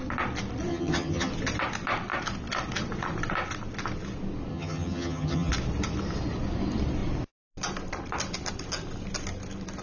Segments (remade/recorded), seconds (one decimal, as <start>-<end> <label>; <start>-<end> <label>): 0.0-0.7 recorded; 0.7-1.3 remade; 1.3-4.5 recorded; 4.5-5.5 remade; 5.5-9.8 recorded